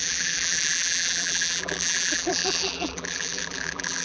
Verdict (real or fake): fake